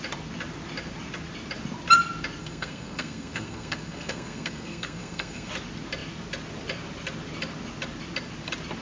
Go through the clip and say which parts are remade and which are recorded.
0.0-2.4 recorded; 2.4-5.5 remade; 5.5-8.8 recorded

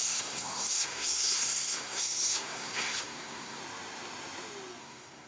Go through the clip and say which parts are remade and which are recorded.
0.0-3.6 remade; 3.6-4.8 recorded; 4.8-5.3 remade